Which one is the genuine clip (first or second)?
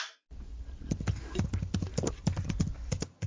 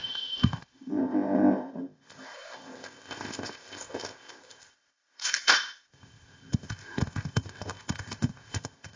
first